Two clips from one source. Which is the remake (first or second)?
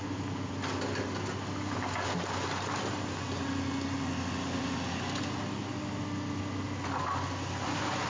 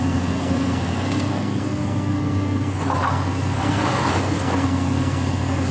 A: second